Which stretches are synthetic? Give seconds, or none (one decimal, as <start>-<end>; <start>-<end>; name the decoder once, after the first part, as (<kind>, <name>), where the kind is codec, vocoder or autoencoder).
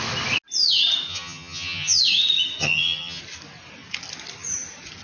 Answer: 1.1-2.0 (vocoder, HiFi-GAN); 2.6-3.2